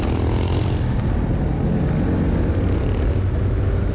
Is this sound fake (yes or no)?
no